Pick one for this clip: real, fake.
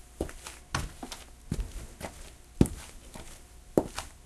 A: real